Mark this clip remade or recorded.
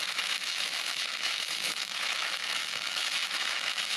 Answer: remade